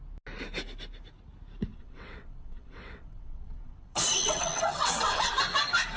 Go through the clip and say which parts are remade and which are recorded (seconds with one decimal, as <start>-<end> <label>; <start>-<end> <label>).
0.0-1.7 recorded; 1.7-5.3 remade; 5.3-6.0 recorded